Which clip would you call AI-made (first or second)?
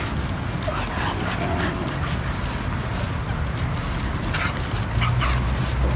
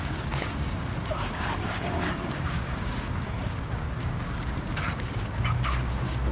second